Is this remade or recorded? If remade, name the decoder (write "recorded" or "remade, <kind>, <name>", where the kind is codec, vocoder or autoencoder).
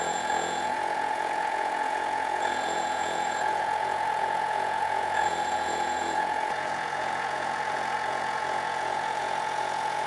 remade, vocoder, Vocos